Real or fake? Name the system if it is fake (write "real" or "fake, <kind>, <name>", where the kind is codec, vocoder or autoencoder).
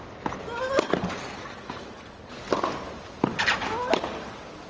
real